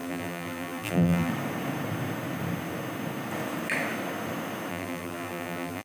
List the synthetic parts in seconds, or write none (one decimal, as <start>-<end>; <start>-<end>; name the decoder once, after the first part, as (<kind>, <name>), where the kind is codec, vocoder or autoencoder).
0.0-1.3 (vocoder, BigVGAN v2); 4.7-5.8